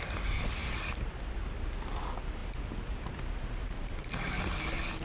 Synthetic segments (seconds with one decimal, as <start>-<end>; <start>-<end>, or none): none